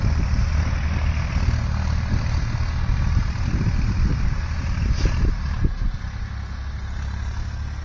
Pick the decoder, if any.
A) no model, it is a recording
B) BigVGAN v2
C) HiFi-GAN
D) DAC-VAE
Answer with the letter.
A